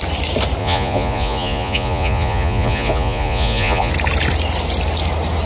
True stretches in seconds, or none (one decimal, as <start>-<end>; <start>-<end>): 0.0-0.6; 3.9-5.5